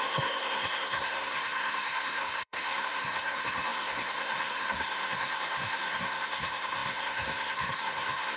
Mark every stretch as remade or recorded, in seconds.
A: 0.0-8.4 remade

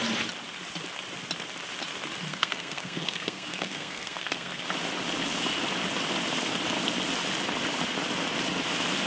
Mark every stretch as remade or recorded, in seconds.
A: 0.0-2.3 recorded; 2.3-4.6 remade; 4.6-9.1 recorded

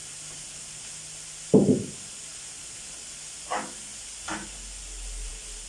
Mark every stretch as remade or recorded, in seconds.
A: 0.0-5.7 recorded